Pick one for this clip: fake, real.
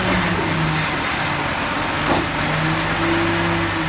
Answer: real